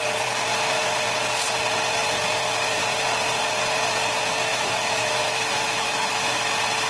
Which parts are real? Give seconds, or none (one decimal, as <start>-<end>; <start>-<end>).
0.0-4.5; 6.5-6.9